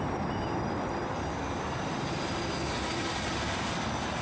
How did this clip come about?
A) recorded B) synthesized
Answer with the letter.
A